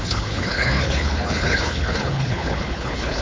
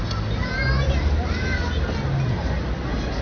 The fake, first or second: first